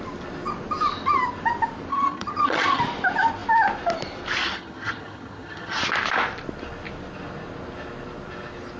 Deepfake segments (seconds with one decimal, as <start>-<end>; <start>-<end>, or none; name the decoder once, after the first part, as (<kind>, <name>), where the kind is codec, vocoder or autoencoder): 1.9-2.8 (vocoder, HiFi-GAN); 4.4-5.8